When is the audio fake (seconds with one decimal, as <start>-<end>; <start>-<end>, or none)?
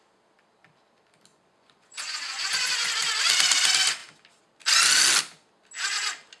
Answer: 1.3-2.9